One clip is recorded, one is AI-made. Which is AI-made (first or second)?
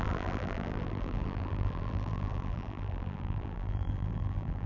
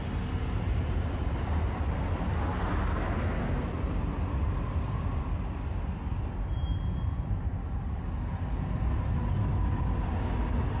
first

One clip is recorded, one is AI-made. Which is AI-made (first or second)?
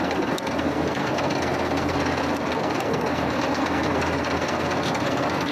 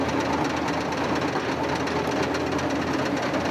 first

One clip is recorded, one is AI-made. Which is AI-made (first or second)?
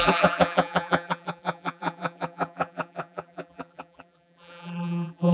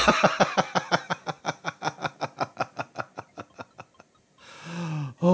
first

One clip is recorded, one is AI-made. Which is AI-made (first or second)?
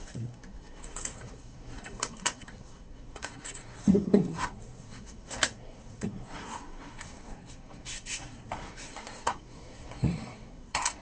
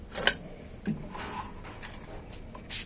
first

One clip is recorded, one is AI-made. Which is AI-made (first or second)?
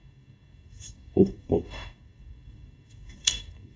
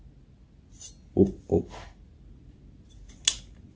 first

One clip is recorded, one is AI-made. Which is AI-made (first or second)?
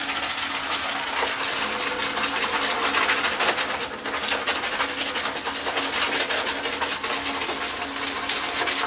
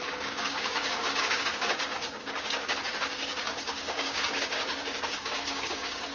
second